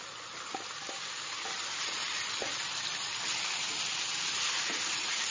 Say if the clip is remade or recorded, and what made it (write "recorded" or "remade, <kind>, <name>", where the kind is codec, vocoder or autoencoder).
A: recorded